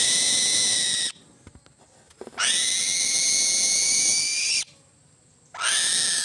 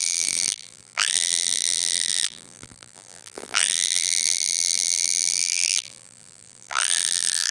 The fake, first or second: second